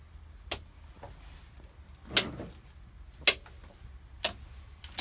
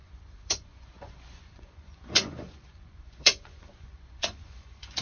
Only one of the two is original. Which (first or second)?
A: first